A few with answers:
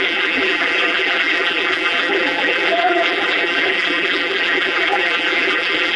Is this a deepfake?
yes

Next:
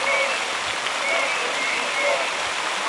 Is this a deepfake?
no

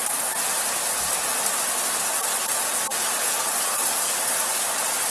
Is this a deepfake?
no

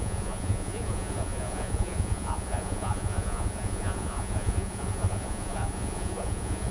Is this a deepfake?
yes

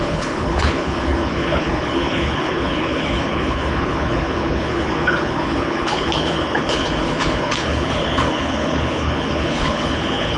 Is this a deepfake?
yes